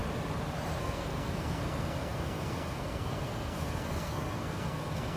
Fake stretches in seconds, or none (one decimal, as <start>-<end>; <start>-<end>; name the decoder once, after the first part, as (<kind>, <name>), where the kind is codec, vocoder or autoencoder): 0.8-5.2 (codec, SNAC)